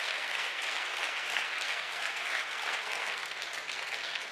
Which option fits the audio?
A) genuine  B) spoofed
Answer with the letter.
B